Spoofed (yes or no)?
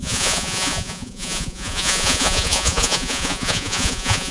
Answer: yes